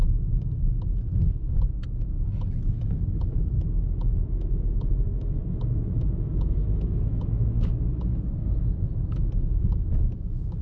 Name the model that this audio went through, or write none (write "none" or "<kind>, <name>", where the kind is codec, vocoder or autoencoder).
autoencoder, DAC-VAE